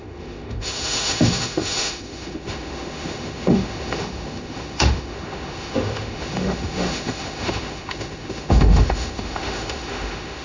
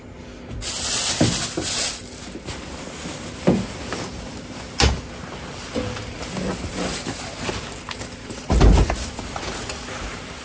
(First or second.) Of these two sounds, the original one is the second